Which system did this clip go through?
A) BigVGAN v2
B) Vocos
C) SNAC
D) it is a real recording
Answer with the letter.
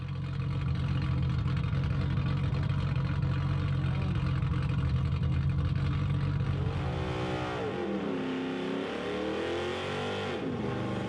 D